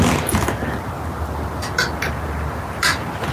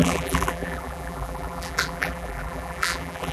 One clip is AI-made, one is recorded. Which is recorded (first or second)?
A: first